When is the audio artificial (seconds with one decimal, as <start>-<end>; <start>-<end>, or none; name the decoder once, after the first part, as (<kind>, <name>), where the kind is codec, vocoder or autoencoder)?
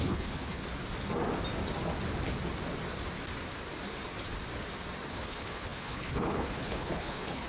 0.0-0.6 (codec, HILCodec); 5.1-7.5